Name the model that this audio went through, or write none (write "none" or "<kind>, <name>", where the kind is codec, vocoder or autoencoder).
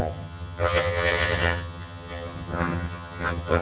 vocoder, HiFi-GAN